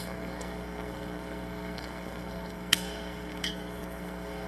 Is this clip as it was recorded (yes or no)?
no